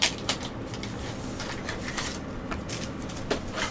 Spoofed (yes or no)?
yes